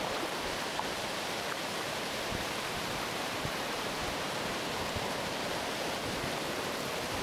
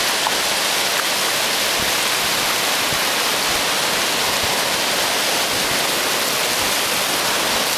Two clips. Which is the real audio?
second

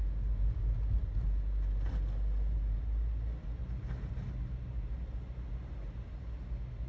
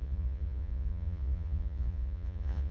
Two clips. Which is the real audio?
first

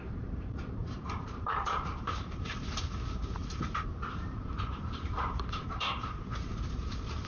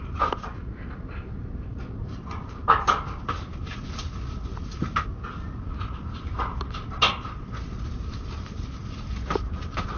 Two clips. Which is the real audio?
second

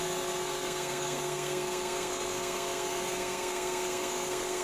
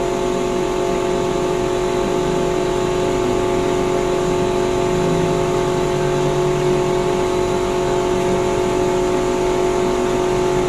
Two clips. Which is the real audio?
second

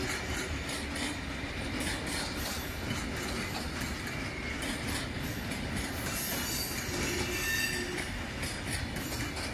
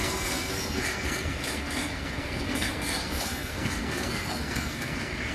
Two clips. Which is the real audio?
first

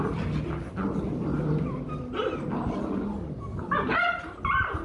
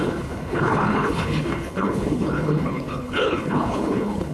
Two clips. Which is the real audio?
first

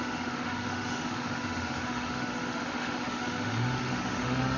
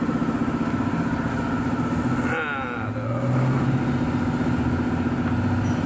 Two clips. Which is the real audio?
second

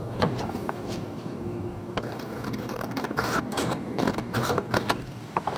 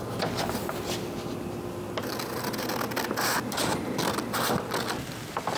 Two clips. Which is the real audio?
second